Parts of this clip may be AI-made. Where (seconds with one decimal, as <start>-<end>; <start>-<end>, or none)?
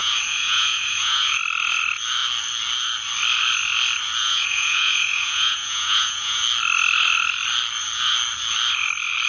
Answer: 0.0-1.4; 4.2-6.4